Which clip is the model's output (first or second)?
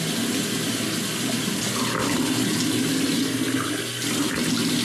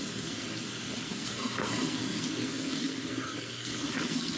second